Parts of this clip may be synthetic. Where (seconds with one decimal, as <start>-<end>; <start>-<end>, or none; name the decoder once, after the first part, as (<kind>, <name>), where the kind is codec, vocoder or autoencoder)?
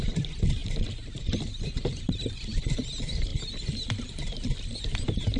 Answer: none